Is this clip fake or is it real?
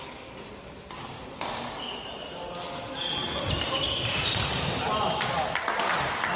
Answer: real